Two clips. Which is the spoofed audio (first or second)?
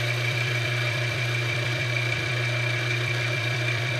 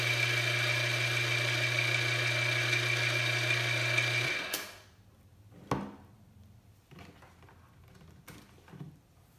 first